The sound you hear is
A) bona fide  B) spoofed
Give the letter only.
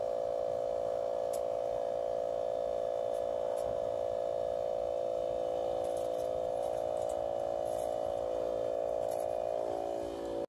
A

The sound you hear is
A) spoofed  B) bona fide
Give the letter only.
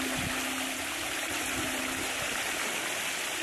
A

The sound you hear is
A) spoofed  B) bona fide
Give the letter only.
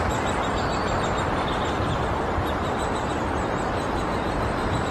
A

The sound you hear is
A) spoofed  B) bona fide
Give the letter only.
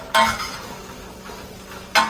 B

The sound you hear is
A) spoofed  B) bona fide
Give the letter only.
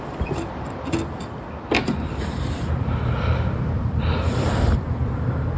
A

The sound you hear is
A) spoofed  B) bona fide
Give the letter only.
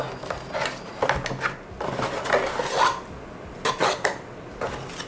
B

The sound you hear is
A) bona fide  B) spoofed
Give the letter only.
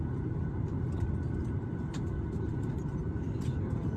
B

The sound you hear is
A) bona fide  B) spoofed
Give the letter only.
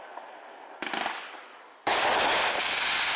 A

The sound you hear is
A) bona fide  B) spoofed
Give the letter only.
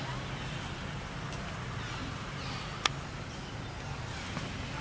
A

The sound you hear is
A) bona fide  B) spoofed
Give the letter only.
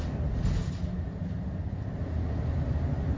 A